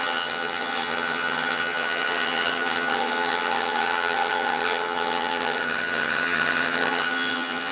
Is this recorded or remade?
remade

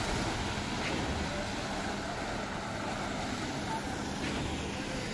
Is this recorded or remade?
recorded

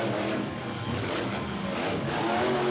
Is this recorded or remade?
remade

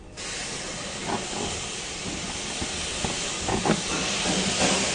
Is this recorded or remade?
recorded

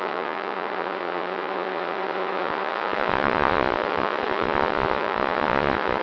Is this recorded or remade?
remade